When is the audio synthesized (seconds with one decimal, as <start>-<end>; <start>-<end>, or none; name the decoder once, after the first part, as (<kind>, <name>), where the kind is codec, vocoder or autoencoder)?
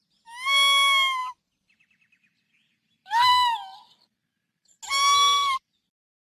none